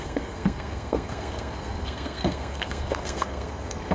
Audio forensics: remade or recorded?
remade